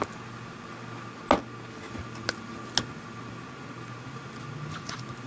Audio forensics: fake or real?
real